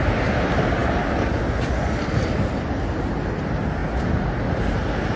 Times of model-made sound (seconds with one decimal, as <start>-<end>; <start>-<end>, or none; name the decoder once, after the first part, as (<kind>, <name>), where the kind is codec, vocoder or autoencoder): none